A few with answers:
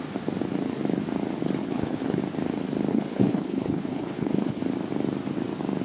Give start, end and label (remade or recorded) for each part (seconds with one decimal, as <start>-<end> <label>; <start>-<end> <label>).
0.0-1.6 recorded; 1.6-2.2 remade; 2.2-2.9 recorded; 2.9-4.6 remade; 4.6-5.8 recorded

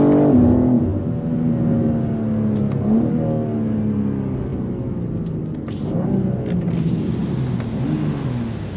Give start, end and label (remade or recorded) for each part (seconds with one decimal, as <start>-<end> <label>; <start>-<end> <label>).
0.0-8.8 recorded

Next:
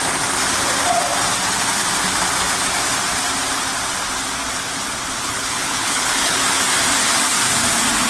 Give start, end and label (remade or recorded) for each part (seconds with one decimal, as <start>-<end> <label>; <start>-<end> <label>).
0.0-5.2 recorded; 5.2-6.4 remade; 6.4-8.1 recorded

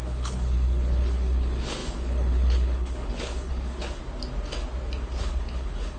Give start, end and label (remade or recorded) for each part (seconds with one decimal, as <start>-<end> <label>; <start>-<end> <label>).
0.0-4.0 remade; 4.0-5.2 recorded; 5.2-6.0 remade

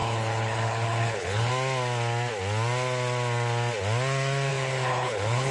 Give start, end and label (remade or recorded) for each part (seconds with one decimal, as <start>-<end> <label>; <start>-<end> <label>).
0.0-1.5 remade; 1.5-4.5 recorded; 4.5-5.5 remade

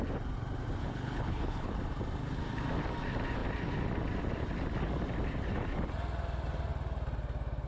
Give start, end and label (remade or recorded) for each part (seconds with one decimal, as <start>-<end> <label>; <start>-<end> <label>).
0.0-0.8 recorded; 0.8-1.9 remade; 1.9-7.7 recorded